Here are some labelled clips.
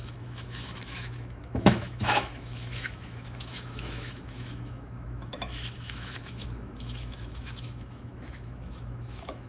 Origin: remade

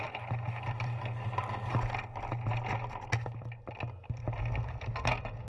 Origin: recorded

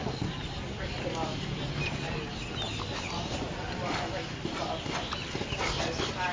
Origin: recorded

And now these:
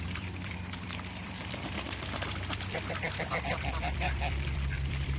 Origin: remade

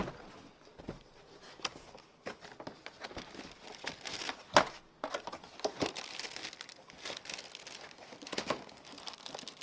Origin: recorded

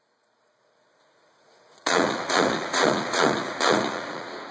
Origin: remade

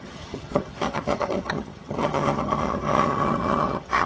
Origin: remade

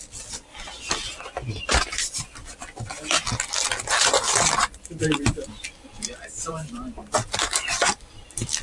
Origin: remade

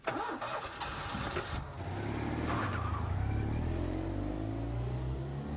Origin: recorded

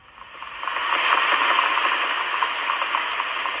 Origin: recorded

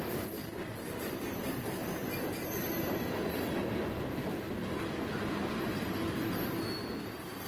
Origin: recorded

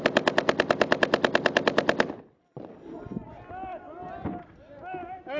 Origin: recorded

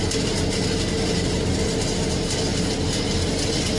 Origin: recorded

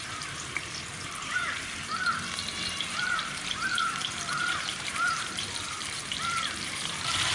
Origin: remade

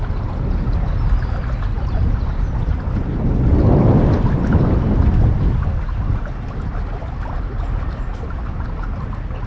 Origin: recorded